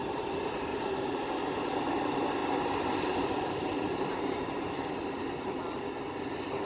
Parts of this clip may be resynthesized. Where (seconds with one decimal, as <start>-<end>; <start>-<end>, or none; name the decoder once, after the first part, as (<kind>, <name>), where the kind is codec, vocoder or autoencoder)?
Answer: 0.7-1.3 (vocoder, BigVGAN v2); 2.4-4.9